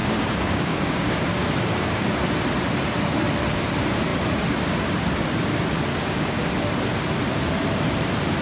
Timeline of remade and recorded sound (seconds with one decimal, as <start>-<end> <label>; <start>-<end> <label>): 0.0-2.2 remade; 2.2-5.9 recorded; 5.9-6.5 remade; 6.5-8.4 recorded